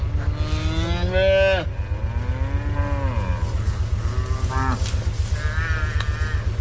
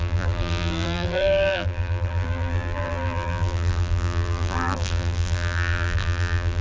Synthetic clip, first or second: second